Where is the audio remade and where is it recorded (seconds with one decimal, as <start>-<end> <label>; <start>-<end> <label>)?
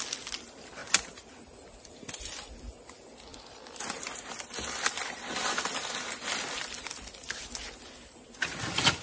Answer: 0.0-3.3 recorded; 3.3-7.4 remade; 7.4-9.0 recorded